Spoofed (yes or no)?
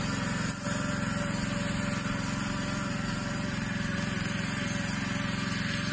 no